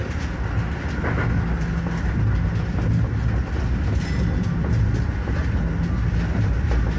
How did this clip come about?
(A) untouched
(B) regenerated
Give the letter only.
A